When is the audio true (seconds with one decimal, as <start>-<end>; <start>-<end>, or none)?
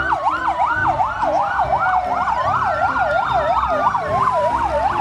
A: 0.8-3.8